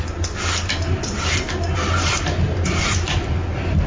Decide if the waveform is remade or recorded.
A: recorded